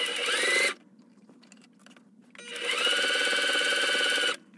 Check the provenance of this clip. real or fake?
real